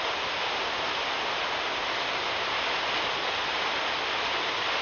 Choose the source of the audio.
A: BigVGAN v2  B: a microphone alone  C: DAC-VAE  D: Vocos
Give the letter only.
B